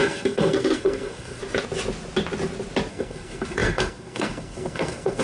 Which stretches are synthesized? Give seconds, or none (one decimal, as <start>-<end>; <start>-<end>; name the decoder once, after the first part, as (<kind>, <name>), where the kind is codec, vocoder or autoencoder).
0.0-1.4 (codec, SNAC); 2.9-5.2